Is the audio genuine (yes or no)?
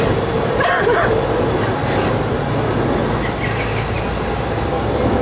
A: yes